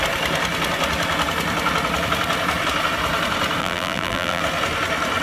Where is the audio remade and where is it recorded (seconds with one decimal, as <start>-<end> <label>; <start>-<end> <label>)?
0.0-3.6 recorded; 3.6-4.4 remade; 4.4-5.2 recorded